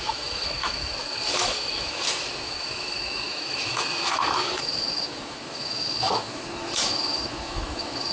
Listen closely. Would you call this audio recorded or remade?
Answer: remade